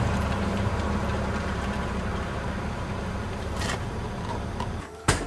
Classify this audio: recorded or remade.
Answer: remade